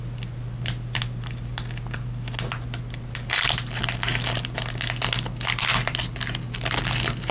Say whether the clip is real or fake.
real